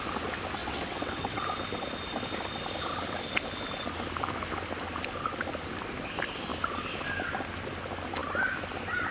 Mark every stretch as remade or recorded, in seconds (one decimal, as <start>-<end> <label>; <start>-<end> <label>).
0.0-0.6 recorded; 0.6-1.4 remade; 1.4-9.1 recorded